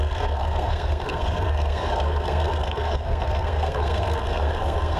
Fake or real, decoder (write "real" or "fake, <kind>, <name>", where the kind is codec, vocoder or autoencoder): fake, codec, SNAC